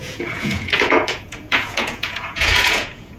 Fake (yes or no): yes